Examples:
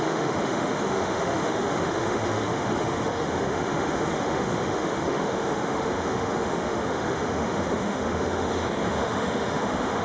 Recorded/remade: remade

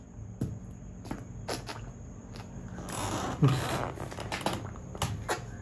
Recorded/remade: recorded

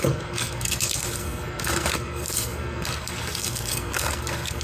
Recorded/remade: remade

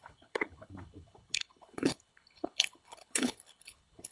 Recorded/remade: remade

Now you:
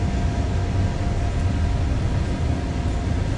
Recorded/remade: recorded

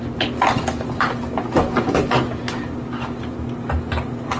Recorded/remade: recorded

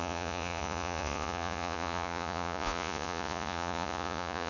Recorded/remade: remade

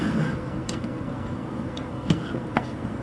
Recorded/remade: remade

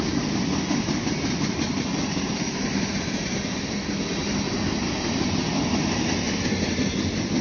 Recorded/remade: recorded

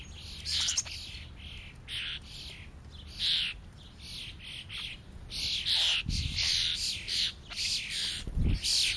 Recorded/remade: recorded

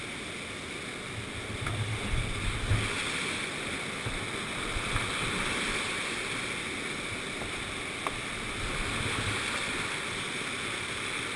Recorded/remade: recorded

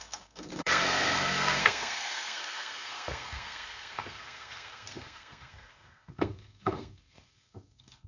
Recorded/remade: remade